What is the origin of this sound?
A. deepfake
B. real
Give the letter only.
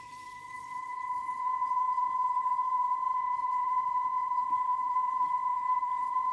A